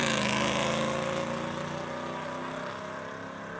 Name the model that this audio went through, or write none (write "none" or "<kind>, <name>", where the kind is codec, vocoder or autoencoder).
none